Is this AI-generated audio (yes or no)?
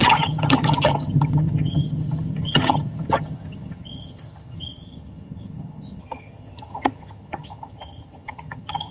yes